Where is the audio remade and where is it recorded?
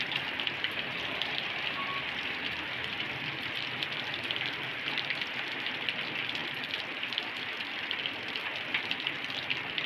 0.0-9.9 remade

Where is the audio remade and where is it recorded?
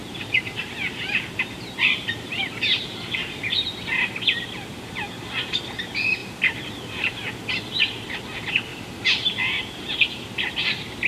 0.0-3.5 remade; 3.5-8.7 recorded; 8.7-9.7 remade; 9.7-11.1 recorded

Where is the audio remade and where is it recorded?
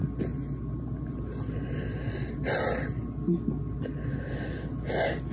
0.0-5.3 recorded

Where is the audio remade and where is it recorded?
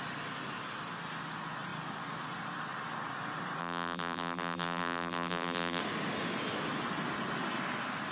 0.0-3.6 recorded; 3.6-5.8 remade; 5.8-8.1 recorded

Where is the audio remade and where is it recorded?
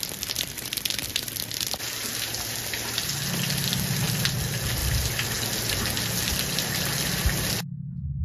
0.0-8.2 recorded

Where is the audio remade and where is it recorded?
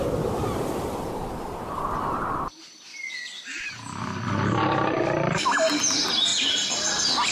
0.0-2.9 remade; 2.9-4.6 recorded; 4.6-6.3 remade; 6.3-7.3 recorded